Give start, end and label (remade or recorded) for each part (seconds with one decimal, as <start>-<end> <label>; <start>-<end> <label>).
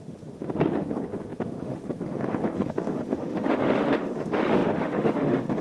0.0-5.6 remade